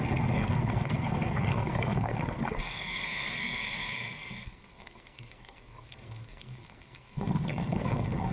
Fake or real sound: fake